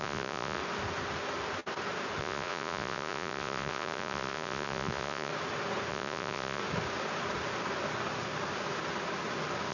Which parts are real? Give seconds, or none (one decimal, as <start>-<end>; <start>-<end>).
0.6-2.2; 5.3-5.9; 6.6-9.7